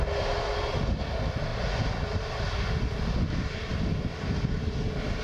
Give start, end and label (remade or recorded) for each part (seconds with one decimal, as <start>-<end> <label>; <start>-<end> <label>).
0.0-5.2 recorded